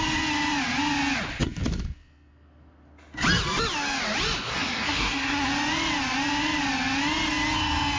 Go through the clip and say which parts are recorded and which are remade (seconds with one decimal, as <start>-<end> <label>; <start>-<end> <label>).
0.0-4.5 recorded; 4.5-5.5 remade; 5.5-8.0 recorded